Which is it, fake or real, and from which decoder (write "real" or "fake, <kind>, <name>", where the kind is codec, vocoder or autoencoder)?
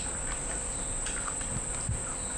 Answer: real